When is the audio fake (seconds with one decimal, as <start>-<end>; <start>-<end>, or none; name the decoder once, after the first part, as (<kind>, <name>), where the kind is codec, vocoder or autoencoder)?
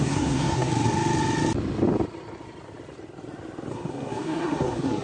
0.0-0.7 (codec, SNAC); 3.7-5.0